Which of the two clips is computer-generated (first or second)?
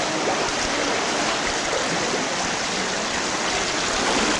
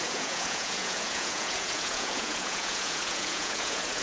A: second